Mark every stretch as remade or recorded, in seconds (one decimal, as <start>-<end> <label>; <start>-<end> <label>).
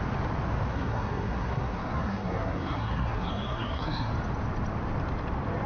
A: 0.0-0.7 recorded; 0.7-4.1 remade; 4.1-5.7 recorded